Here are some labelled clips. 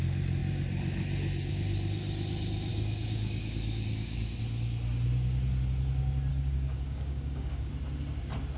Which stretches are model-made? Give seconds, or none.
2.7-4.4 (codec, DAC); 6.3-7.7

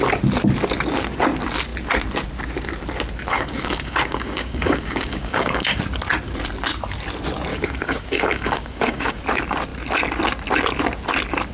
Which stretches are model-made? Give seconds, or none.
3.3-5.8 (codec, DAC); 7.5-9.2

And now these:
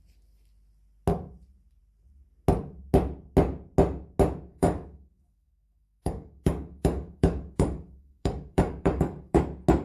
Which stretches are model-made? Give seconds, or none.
4.5-9.4 (codec, DAC)

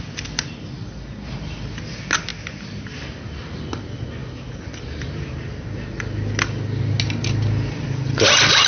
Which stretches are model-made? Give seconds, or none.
none

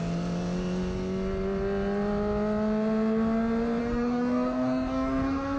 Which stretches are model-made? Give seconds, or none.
3.8-5.6 (codec, DAC)

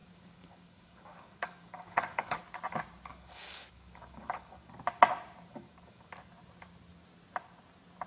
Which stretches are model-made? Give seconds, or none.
0.0-2.4 (codec, DAC); 3.1-4.7; 5.5-6.1

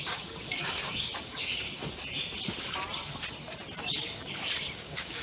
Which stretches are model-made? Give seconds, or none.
0.0-1.8 (codec, DAC); 3.8-5.2